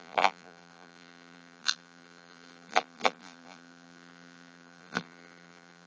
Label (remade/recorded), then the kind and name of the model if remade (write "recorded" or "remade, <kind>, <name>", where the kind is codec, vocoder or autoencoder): remade, vocoder, BigVGAN v2